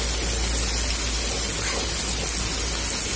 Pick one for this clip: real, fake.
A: real